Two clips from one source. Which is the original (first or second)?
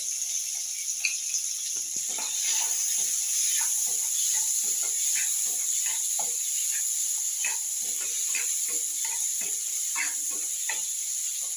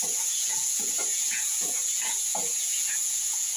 first